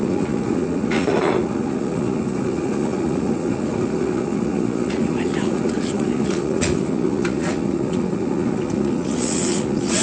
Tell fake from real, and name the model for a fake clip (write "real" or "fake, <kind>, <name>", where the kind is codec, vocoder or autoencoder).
fake, vocoder, Vocos